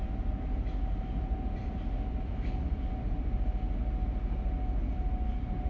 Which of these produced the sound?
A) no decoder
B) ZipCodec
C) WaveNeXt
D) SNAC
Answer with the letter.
A